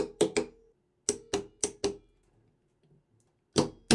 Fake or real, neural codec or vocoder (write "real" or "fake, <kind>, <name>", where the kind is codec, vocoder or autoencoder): real